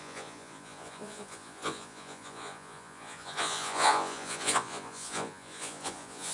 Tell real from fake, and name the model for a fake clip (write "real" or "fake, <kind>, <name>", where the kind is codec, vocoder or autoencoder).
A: fake, vocoder, Vocos